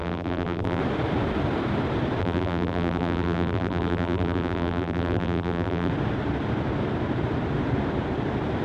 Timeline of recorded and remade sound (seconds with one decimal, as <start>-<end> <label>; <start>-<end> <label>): 0.0-0.8 remade; 0.8-2.2 recorded; 2.2-5.9 remade; 5.9-8.6 recorded